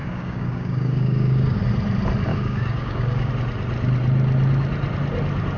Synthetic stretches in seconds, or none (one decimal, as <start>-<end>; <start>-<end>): 0.0-1.6; 2.3-3.3